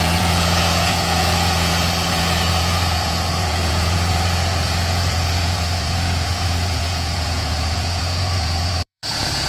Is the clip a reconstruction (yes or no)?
yes